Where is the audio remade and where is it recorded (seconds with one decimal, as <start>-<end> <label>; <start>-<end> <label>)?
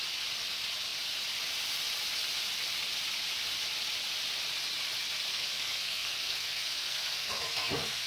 0.0-5.3 recorded; 5.3-8.1 remade